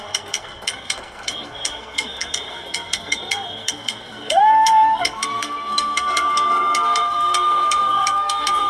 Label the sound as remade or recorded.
remade